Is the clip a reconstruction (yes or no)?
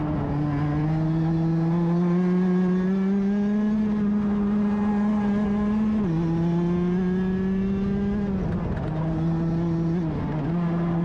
no